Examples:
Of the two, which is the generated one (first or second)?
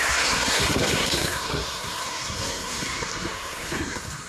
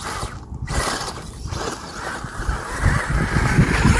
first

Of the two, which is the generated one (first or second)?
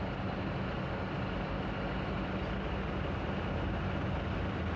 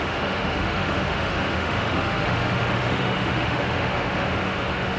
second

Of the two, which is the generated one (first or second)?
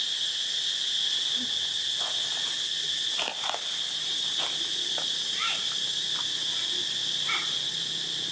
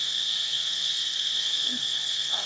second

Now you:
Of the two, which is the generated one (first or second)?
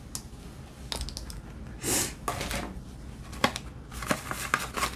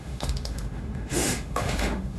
second